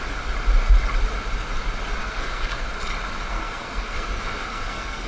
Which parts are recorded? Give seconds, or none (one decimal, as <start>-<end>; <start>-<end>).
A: 0.0-2.0; 2.7-3.3

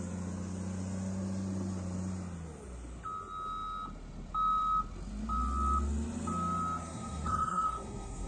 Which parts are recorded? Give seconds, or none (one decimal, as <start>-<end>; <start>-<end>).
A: 0.0-6.8

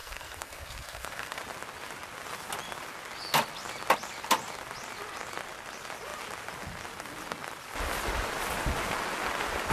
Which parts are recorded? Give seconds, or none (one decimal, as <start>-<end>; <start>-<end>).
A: 1.4-9.7

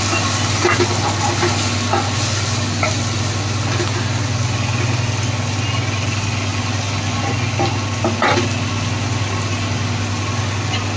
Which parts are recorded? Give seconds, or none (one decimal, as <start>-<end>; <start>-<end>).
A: 0.0-11.0

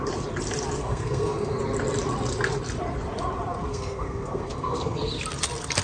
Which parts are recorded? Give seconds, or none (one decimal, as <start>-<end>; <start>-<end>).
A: 0.0-0.8; 1.6-3.7; 5.1-5.8

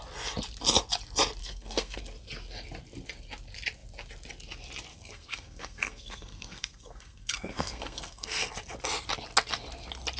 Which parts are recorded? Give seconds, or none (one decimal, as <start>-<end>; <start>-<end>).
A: 0.0-1.4; 2.0-4.9; 8.5-10.2

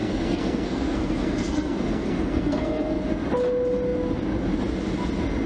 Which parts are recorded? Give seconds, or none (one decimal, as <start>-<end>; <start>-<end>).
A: 3.0-5.5

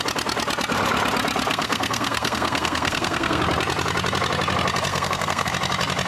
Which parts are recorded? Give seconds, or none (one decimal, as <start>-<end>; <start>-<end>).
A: 0.0-1.5; 3.4-4.9; 5.5-6.1